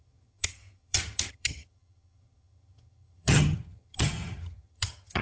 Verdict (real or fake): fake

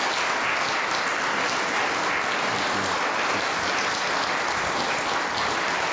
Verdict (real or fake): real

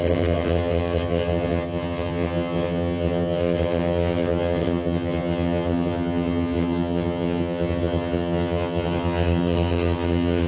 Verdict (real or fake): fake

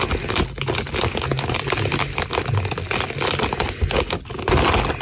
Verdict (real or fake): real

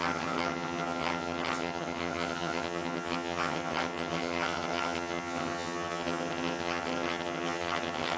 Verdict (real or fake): fake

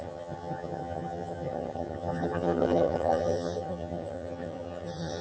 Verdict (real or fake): fake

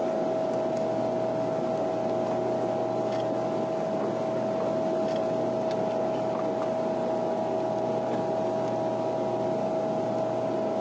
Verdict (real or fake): real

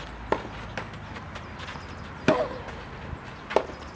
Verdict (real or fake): real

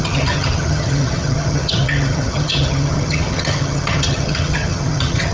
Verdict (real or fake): fake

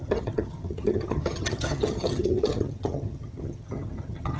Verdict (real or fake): fake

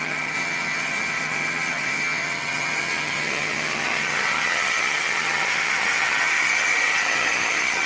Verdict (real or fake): fake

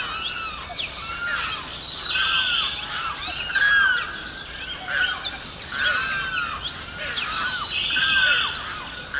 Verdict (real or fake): real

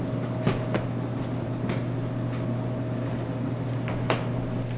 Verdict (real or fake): real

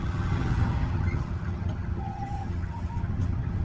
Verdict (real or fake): fake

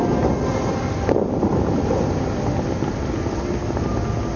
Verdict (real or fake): real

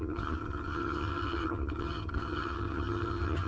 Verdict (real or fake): fake